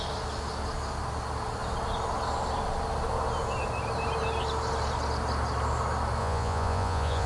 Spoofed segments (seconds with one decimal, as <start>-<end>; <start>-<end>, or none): 6.2-7.3